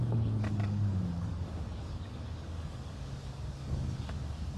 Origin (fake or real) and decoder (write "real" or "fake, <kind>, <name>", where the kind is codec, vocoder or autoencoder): fake, codec, DAC